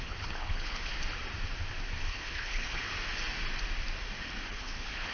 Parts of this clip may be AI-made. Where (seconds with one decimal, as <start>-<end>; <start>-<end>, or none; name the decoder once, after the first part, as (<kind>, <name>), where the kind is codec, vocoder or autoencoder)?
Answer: 0.0-0.9 (codec, HILCodec); 2.1-2.8; 4.5-5.1